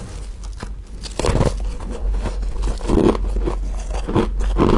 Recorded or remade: recorded